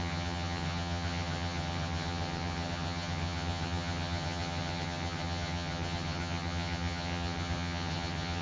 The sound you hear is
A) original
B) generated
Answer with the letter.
B